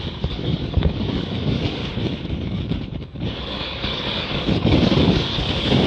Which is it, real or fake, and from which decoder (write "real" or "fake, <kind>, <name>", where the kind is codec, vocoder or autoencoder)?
fake, codec, DAC